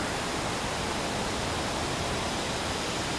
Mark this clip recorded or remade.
recorded